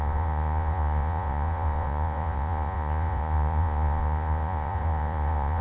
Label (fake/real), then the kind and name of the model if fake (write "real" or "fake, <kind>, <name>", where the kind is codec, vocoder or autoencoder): fake, vocoder, Vocos